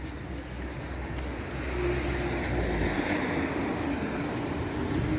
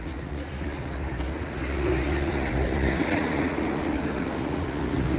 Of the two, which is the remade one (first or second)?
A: second